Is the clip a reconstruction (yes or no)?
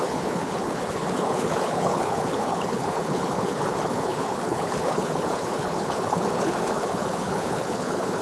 yes